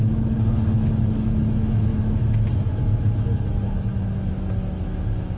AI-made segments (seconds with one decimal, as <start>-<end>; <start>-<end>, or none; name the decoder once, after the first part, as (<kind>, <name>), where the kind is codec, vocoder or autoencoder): 1.0-5.4 (autoencoder, DAC-VAE)